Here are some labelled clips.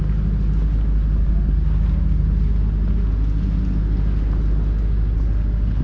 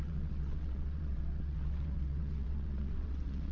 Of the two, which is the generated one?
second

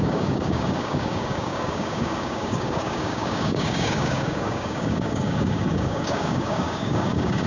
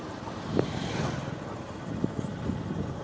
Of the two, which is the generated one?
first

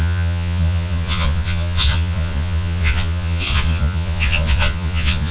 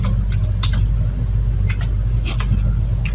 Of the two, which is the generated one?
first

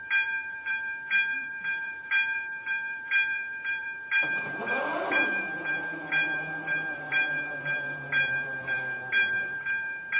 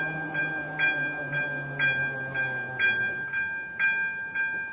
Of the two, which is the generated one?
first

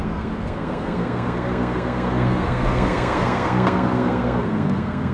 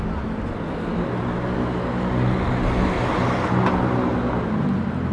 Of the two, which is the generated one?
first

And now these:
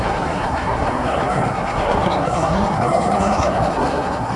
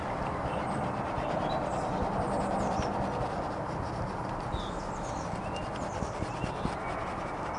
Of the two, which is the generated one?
first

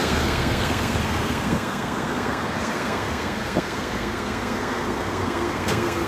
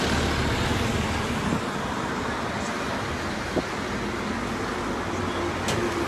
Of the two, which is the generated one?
first